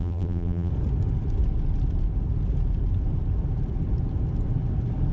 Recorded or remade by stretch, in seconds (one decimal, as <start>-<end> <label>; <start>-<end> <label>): 0.0-0.7 remade; 0.7-5.1 recorded